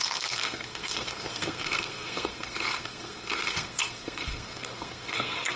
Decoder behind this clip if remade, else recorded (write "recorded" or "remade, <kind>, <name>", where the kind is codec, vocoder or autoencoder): remade, codec, SNAC